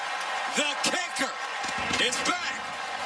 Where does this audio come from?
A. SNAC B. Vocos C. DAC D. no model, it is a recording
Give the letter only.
B